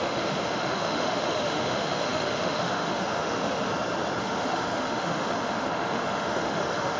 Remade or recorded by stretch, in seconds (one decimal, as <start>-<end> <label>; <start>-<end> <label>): 0.0-3.7 remade; 3.7-4.2 recorded; 4.2-7.0 remade